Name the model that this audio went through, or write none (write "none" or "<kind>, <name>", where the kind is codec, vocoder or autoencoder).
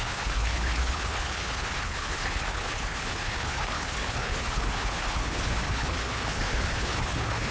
codec, HILCodec